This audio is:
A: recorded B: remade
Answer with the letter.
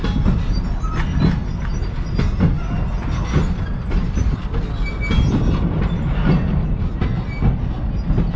A